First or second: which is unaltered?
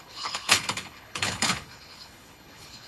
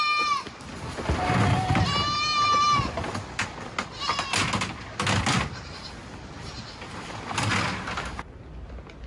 second